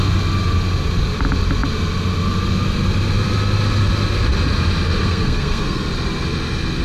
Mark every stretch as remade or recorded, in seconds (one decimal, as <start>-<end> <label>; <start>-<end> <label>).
0.0-5.0 recorded; 5.0-5.9 remade; 5.9-6.8 recorded